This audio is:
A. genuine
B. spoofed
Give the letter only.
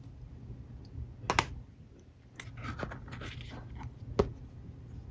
A